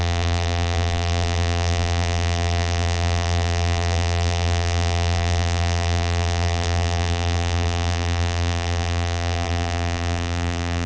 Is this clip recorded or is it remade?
remade